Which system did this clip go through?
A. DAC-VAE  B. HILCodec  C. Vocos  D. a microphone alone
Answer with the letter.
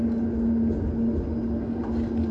D